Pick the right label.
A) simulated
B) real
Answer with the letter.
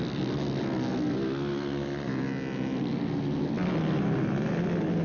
B